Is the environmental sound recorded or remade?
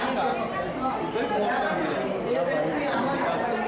recorded